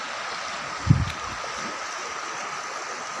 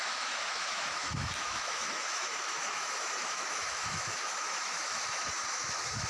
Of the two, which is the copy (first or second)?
second